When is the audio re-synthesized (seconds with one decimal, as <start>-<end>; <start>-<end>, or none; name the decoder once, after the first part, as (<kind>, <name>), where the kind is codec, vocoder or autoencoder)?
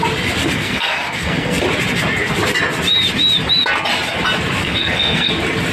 0.4-1.6 (codec, SNAC); 4.6-5.3